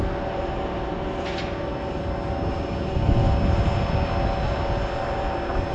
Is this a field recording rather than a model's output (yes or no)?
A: yes